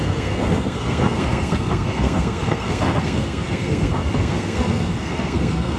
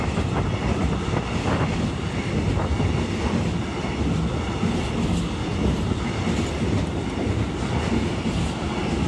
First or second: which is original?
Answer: second